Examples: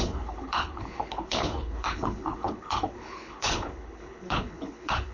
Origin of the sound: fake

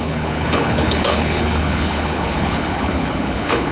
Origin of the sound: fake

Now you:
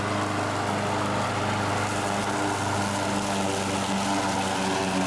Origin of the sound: real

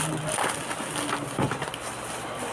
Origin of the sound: real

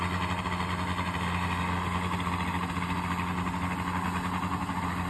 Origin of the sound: real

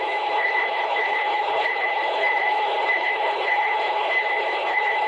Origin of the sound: fake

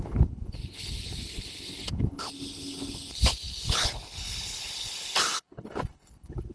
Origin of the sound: fake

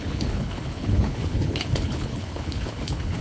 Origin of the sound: fake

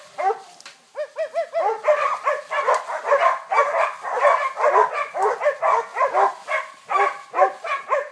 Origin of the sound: real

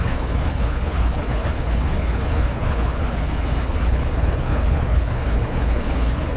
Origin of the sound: fake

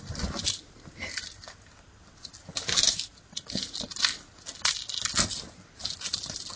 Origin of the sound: real